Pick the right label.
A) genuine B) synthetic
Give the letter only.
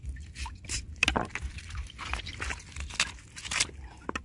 A